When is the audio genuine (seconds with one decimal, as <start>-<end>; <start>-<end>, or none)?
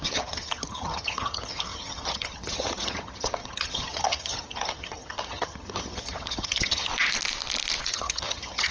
6.9-7.9